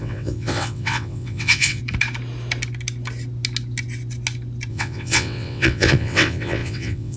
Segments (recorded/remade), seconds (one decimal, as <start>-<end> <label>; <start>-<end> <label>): 0.0-1.8 remade; 1.8-4.7 recorded; 4.7-7.2 remade